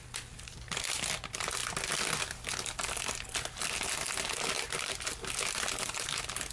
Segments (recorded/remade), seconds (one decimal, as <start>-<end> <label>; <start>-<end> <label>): 0.0-6.5 recorded